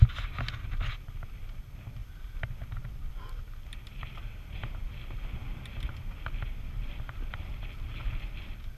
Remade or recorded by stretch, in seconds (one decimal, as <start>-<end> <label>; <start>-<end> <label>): 0.0-8.8 recorded